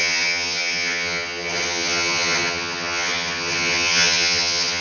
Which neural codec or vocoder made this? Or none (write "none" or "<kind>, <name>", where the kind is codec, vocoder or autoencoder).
vocoder, HiFi-GAN